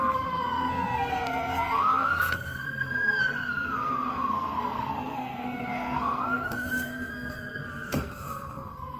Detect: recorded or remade remade